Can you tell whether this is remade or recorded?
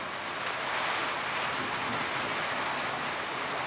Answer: recorded